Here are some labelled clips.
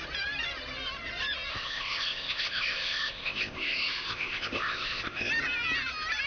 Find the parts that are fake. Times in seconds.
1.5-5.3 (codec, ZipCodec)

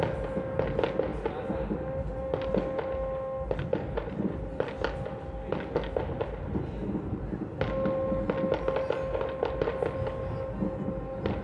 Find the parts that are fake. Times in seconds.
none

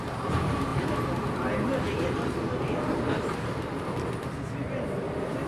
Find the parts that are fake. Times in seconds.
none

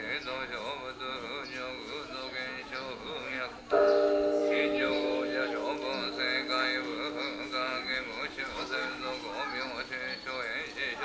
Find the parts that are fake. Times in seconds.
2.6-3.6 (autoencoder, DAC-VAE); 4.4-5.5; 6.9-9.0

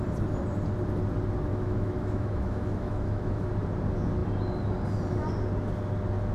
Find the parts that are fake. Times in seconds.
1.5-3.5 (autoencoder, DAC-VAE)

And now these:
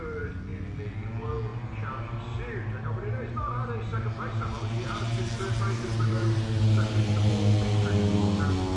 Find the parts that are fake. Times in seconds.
1.5-2.2 (vocoder, BigVGAN v2); 3.9-7.3